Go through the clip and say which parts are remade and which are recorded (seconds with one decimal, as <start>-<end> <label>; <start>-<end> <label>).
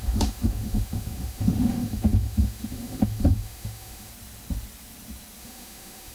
0.0-4.1 remade; 4.1-5.4 recorded; 5.4-6.1 remade